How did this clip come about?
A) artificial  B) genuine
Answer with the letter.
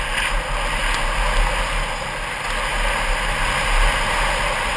B